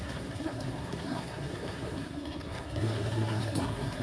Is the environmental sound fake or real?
fake